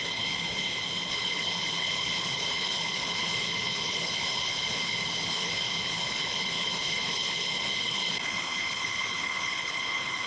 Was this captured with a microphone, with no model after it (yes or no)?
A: no